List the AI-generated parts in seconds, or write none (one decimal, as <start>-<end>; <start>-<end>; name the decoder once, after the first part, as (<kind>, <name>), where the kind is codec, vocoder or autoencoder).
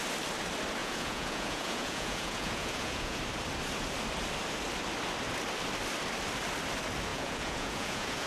0.8-3.2 (vocoder, Vocos); 7.1-8.3